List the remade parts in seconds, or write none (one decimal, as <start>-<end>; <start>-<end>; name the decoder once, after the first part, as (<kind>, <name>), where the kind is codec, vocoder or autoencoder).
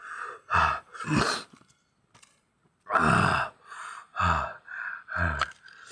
none